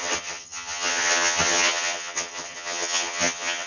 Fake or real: fake